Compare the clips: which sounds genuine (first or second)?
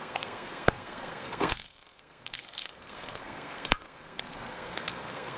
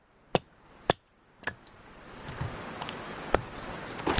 second